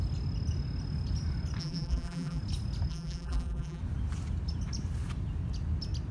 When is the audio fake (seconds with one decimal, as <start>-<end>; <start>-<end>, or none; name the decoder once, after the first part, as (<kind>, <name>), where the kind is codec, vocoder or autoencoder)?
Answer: 1.6-2.4 (vocoder, BigVGAN v2); 2.9-3.8